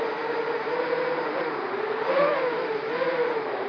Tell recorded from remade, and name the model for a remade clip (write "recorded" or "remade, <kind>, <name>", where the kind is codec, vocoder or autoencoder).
remade, vocoder, BigVGAN v2